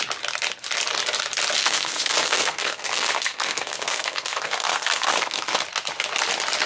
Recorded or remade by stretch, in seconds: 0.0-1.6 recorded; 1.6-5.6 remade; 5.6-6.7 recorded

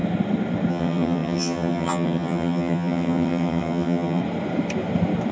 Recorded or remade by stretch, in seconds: 0.0-0.7 recorded; 0.7-4.2 remade; 4.2-5.3 recorded

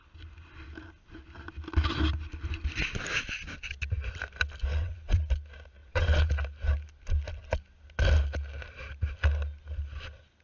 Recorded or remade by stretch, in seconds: 0.0-4.7 recorded; 4.7-5.3 remade; 5.3-5.8 recorded; 5.8-6.3 remade; 6.3-10.4 recorded

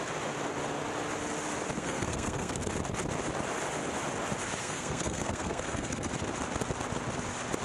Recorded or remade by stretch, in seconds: 0.0-1.8 recorded; 1.8-2.6 remade; 2.6-4.6 recorded; 4.6-6.1 remade; 6.1-7.6 recorded

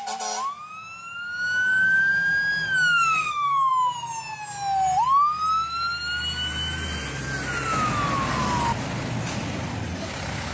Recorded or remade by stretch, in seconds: 0.0-2.9 recorded; 2.9-3.7 remade; 3.7-10.5 recorded

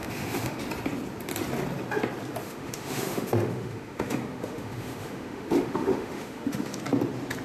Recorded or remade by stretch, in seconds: 0.0-0.6 remade; 0.6-2.4 recorded; 2.4-6.8 remade; 6.8-7.4 recorded

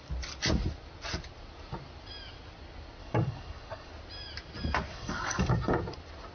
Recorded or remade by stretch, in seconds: 0.0-3.0 recorded; 3.0-3.9 remade; 3.9-4.9 recorded; 4.9-5.5 remade; 5.5-6.3 recorded